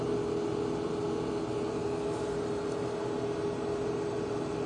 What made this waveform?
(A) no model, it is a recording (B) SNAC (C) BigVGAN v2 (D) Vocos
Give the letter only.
A